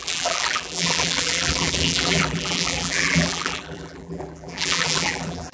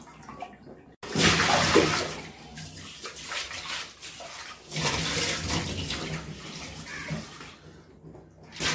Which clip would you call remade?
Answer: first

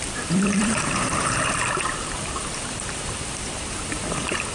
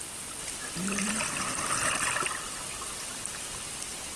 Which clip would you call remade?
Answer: first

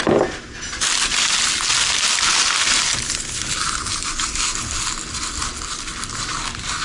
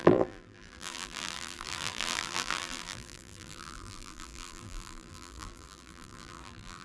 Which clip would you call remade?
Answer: second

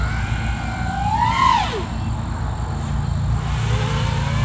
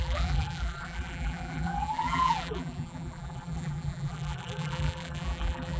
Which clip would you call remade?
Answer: second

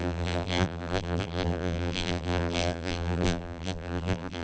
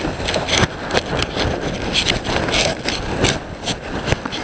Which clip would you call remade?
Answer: first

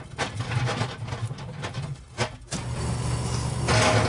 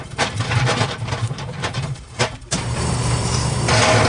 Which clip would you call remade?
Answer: second